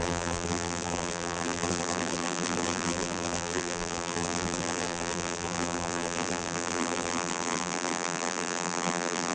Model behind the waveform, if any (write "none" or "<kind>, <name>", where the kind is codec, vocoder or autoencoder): vocoder, BigVGAN v2